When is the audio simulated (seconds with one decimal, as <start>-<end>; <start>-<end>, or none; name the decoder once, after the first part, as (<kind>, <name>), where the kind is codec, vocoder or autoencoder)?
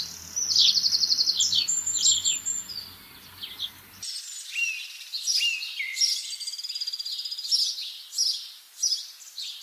none